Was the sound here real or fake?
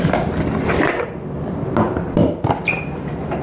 real